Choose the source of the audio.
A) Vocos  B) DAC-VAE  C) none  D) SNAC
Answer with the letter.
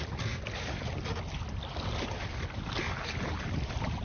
C